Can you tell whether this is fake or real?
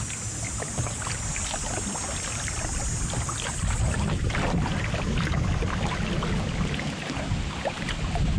real